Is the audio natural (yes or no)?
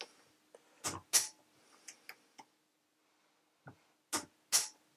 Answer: yes